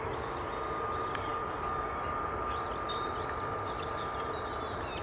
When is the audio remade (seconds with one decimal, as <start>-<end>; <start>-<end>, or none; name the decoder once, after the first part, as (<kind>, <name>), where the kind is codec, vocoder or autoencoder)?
none